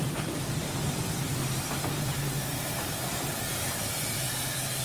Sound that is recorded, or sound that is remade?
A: recorded